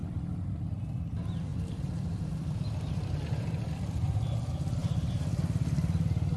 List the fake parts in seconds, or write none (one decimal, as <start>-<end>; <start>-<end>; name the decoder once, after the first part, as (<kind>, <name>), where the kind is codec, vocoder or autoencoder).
0.0-1.0 (vocoder, BigVGAN v2); 1.5-3.2; 4.8-5.4